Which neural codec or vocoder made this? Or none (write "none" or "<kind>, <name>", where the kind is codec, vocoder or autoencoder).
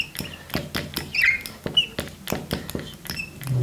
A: none